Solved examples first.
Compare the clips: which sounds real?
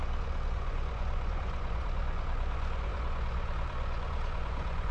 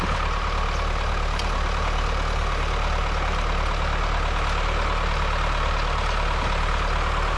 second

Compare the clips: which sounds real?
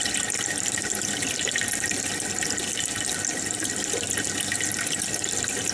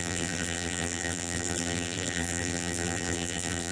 first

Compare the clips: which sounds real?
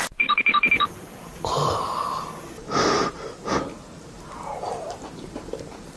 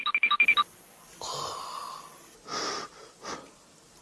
second